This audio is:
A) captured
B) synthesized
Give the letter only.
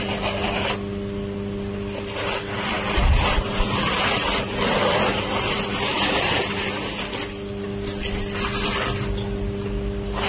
A